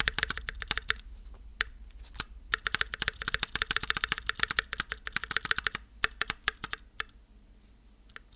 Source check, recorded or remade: recorded